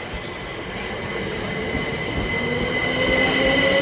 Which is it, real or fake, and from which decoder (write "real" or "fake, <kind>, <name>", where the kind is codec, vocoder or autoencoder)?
real